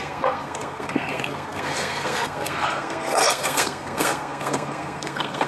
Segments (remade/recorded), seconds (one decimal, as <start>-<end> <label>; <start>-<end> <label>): 0.0-5.5 remade

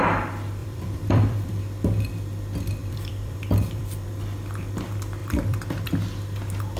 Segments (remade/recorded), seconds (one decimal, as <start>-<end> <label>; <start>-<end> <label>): 0.0-0.6 recorded; 0.6-1.6 remade; 1.6-2.8 recorded; 2.8-4.1 remade; 4.1-5.2 recorded; 5.2-5.9 remade; 5.9-6.8 recorded

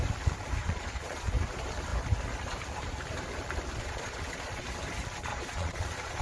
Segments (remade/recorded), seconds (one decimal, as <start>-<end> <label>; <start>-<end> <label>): 0.0-0.6 recorded; 0.6-1.3 remade; 1.3-3.8 recorded; 3.8-4.6 remade; 4.6-5.3 recorded; 5.3-6.2 remade